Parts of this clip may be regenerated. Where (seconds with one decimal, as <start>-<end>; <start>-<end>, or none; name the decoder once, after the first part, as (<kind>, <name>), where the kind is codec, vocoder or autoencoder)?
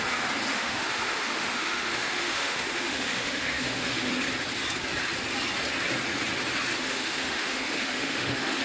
0.5-4.1 (autoencoder, DAC-VAE); 6.8-8.6